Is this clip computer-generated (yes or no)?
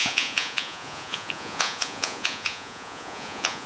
yes